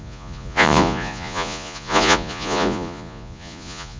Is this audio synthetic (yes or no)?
yes